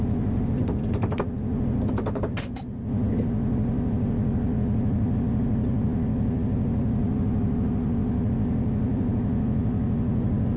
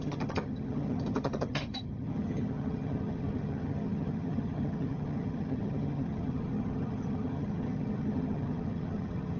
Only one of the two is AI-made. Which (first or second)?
second